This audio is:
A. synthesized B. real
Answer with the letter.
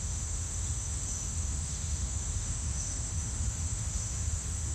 A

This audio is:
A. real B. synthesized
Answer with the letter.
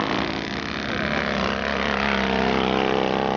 A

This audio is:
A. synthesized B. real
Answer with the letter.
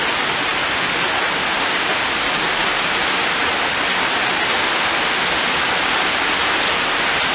B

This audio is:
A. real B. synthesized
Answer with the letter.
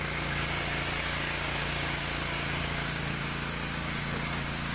B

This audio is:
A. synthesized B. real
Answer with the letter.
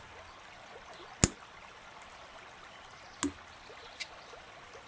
B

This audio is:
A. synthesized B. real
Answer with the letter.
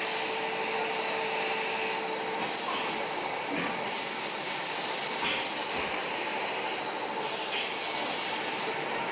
B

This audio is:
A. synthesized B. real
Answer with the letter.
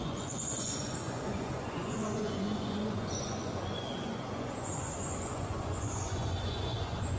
A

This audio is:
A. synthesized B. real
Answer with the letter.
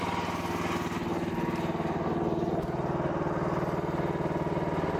B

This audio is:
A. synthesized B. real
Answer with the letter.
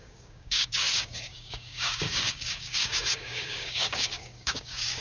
A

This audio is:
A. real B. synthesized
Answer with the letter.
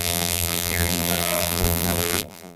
B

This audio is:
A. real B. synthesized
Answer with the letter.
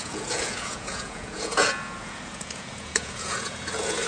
B